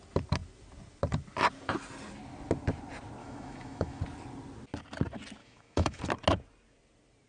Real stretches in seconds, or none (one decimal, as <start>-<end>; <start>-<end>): 0.0-3.2; 4.0-5.4; 6.0-7.3